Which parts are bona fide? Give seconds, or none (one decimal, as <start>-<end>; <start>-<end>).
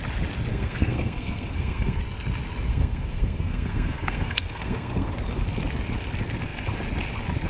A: 0.0-0.5; 2.0-2.7; 5.1-7.5